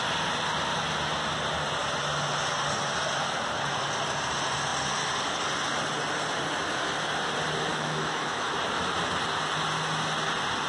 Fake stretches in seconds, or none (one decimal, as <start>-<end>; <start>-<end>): 7.7-8.5